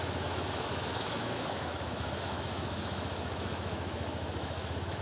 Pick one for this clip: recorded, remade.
remade